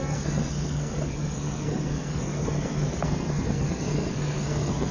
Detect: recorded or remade remade